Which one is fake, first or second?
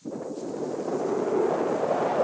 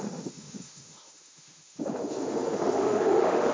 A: second